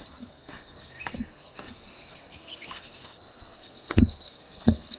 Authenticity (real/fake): fake